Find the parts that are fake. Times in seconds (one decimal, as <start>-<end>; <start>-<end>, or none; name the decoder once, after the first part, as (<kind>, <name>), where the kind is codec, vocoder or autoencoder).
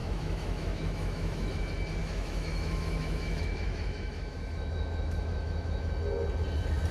0.0-1.6 (autoencoder, DAC-VAE); 2.0-5.9